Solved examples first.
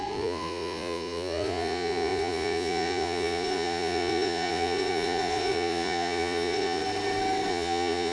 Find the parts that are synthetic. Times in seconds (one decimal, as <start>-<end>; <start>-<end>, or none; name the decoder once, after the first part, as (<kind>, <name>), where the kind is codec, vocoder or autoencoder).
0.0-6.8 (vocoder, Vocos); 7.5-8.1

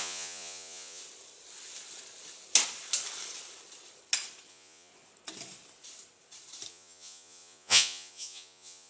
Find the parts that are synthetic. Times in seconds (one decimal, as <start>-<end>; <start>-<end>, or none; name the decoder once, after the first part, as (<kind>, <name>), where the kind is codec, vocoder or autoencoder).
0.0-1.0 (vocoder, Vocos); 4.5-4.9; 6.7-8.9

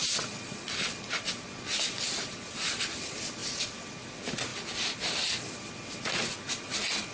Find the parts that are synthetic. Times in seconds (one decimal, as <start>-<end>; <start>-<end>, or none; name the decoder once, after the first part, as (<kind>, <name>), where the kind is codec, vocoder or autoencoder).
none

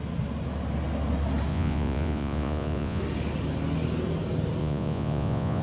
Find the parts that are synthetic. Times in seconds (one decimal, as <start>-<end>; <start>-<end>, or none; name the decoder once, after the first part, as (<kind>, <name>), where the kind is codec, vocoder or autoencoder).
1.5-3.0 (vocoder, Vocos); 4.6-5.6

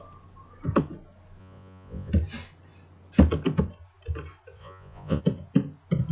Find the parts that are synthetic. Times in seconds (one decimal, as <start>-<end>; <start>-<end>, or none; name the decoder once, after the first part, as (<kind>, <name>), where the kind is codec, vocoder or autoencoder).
1.4-2.1 (vocoder, Vocos); 4.6-5.2

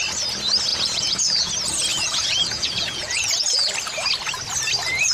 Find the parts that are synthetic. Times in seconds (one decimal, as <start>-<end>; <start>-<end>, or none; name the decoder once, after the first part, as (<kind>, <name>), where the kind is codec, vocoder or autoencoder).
0.7-1.5 (vocoder, Vocos); 1.9-3.7